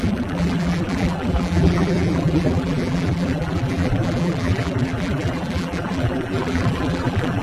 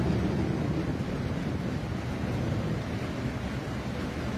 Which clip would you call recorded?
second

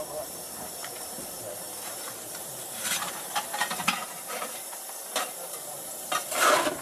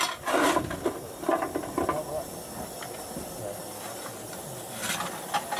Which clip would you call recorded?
second